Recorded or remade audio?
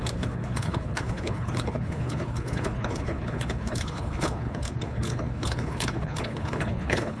remade